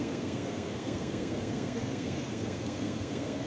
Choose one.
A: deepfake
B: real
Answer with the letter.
A